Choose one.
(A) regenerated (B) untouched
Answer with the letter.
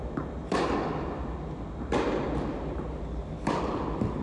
A